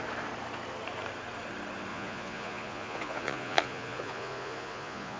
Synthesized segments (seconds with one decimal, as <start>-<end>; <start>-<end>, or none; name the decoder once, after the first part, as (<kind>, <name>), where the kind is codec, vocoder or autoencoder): 1.9-5.2 (vocoder, Vocos)